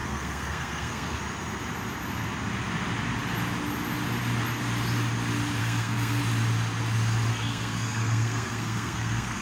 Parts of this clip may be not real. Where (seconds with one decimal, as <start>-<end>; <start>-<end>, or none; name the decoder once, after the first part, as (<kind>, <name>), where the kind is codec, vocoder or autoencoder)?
0.0-1.2 (codec, SNAC); 5.6-6.2; 7.3-9.4